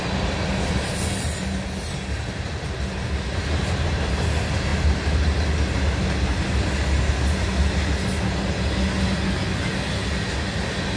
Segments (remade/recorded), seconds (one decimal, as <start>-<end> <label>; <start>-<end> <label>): 0.0-11.0 recorded